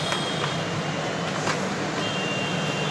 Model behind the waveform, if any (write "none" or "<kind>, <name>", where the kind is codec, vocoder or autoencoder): none